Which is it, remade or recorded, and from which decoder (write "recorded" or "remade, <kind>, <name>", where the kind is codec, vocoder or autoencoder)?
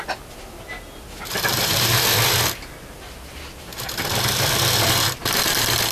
recorded